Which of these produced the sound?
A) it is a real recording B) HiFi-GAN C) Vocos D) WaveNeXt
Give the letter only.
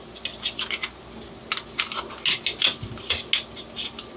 A